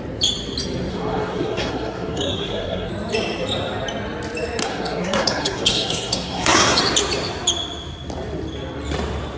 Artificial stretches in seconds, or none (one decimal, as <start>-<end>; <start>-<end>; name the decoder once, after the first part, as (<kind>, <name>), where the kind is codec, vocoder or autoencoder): 0.9-2.9 (codec, SNAC); 4.6-6.8